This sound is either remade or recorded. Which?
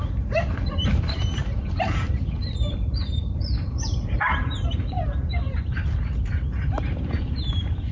remade